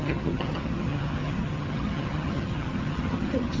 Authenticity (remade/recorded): remade